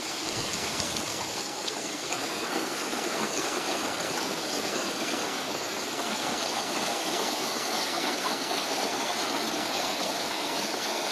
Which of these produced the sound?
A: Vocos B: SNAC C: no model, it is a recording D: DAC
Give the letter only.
B